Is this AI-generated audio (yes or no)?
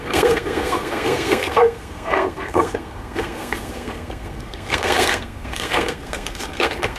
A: yes